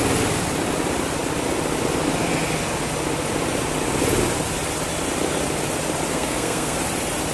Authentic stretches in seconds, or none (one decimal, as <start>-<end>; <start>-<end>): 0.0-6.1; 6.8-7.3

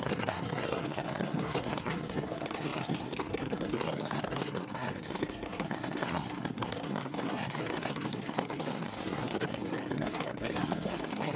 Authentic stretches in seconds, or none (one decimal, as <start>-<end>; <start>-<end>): none

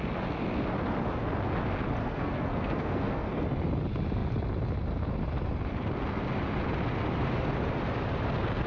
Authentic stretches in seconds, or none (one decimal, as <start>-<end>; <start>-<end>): 0.0-2.0; 3.3-8.7